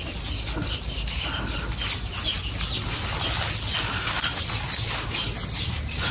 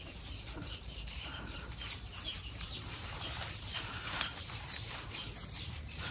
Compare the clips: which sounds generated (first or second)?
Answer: second